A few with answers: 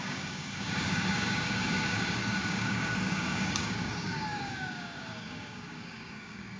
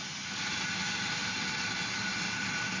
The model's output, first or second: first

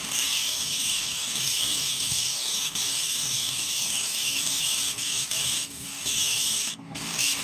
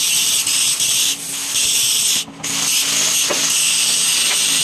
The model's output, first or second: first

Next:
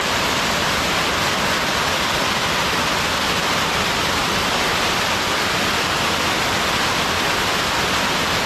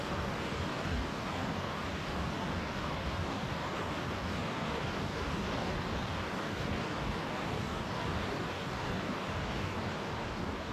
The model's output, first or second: second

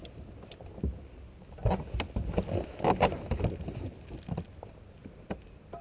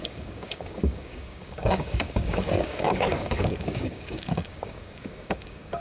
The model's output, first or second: second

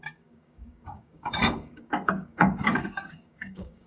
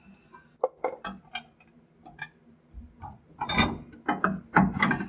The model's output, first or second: first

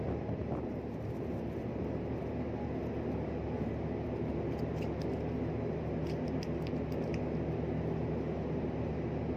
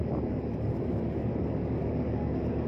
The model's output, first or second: second